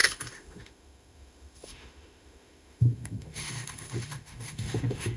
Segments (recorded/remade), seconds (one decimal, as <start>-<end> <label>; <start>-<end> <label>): 0.0-5.2 remade